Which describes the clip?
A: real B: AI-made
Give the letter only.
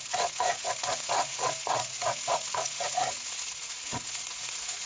B